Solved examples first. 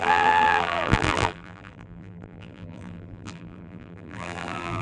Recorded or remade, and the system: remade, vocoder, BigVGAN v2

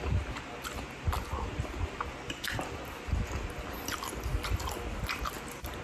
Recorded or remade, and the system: recorded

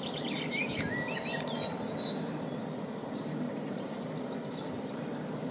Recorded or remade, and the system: recorded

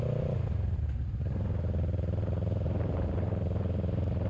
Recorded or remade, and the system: recorded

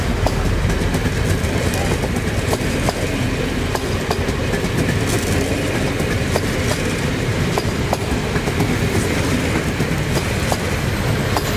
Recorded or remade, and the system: recorded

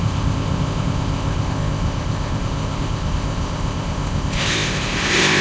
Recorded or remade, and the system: remade, codec, ZipCodec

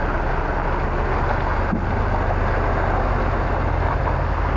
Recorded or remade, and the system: recorded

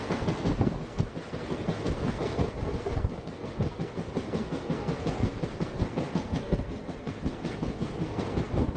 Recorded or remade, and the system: remade, codec, SNAC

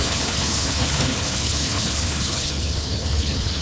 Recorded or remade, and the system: remade, codec, HILCodec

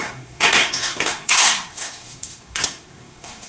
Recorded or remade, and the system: remade, codec, SNAC